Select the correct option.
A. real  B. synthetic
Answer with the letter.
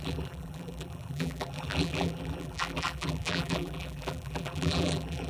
B